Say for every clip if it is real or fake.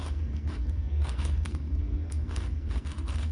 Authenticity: fake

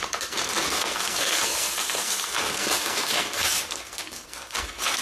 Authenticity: fake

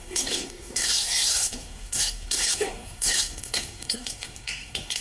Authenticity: fake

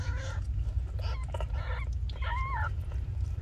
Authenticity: real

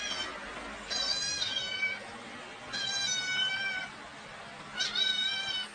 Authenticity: real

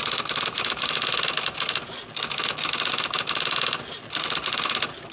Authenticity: real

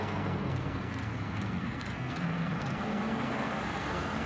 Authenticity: fake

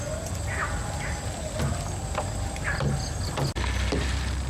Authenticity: real